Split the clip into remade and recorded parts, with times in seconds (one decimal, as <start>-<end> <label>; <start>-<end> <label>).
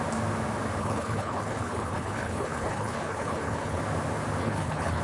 0.0-0.8 recorded; 0.8-3.8 remade; 3.8-4.4 recorded; 4.4-5.0 remade